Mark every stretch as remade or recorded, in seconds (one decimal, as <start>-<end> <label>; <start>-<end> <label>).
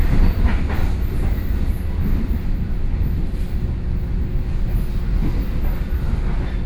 0.0-6.7 recorded